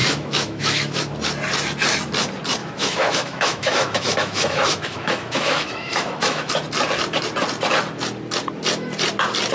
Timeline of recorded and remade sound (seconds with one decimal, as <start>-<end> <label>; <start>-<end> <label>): 0.0-1.1 remade; 1.1-2.6 recorded; 2.6-6.5 remade; 6.5-9.5 recorded